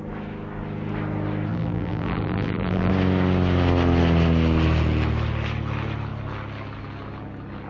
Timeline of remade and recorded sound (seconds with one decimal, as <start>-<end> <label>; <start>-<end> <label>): 0.0-1.5 recorded; 1.5-2.9 remade; 2.9-7.7 recorded

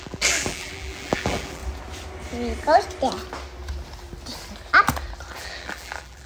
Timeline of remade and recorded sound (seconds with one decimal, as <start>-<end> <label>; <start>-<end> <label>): 0.0-1.6 remade; 1.6-5.4 recorded; 5.4-6.3 remade

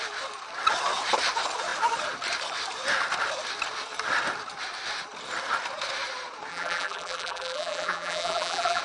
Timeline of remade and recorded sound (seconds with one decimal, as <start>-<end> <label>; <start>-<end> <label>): 0.0-6.5 recorded; 6.5-8.8 remade

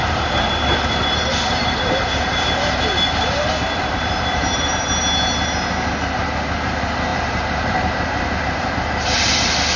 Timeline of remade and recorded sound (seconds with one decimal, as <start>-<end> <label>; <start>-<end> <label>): 0.0-1.6 recorded; 1.6-5.0 remade; 5.0-7.1 recorded; 7.1-8.7 remade; 8.7-9.8 recorded

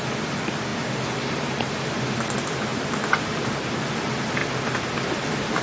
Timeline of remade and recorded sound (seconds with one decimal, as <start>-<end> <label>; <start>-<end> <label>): 0.0-0.7 recorded; 0.7-2.0 remade; 2.0-2.7 recorded; 2.7-3.8 remade; 3.8-5.6 recorded

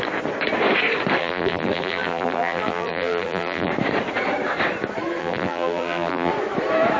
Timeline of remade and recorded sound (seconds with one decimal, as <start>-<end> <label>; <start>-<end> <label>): 0.0-1.2 recorded; 1.2-3.7 remade; 3.7-5.2 recorded; 5.2-6.3 remade; 6.3-7.0 recorded